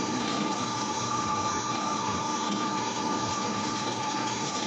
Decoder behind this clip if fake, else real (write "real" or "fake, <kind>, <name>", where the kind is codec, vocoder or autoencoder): fake, codec, SNAC